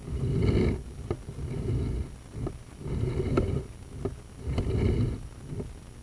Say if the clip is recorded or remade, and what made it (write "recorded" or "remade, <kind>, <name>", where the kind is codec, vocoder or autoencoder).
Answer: recorded